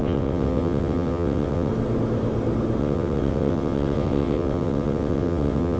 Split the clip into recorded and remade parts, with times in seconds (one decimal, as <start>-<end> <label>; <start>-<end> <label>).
0.0-1.7 remade; 1.7-2.8 recorded; 2.8-5.8 remade